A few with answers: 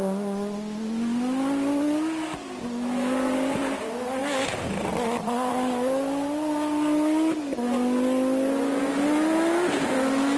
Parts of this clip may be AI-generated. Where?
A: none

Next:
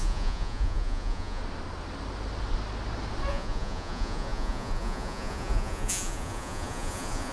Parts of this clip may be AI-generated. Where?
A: 0.0-1.4 (vocoder, Vocos); 3.3-7.3

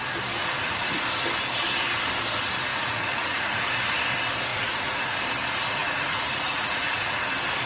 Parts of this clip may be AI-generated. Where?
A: 0.4-1.0 (vocoder, Vocos); 2.7-3.6; 4.5-5.2; 5.8-7.2

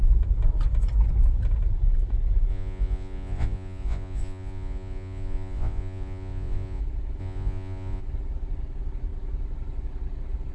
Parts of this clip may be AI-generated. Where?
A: 2.5-6.8 (vocoder, Vocos); 7.2-8.0